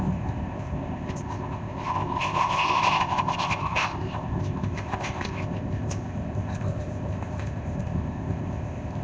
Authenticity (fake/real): fake